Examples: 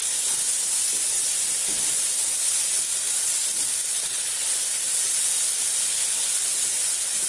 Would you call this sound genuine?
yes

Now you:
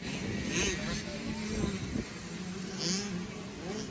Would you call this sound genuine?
yes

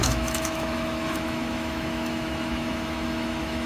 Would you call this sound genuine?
no